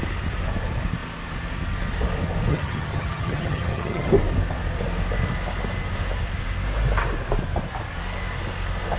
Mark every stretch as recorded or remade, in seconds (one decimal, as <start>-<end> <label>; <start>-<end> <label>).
0.0-2.5 recorded; 2.5-4.1 remade; 4.1-9.0 recorded